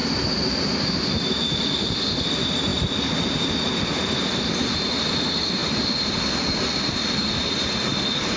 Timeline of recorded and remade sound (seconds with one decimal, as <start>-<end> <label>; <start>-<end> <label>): 0.0-8.4 remade